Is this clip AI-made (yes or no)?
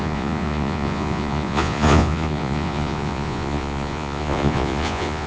yes